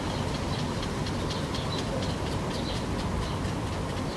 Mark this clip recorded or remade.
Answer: recorded